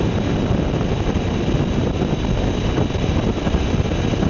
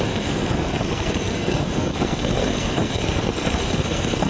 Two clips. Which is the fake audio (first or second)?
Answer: second